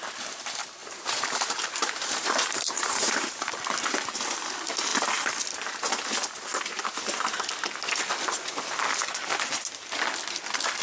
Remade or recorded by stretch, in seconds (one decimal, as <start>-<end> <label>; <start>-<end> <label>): 0.0-0.8 recorded; 0.8-3.3 remade; 3.3-10.8 recorded